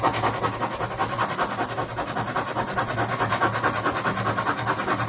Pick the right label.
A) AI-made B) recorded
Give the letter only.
B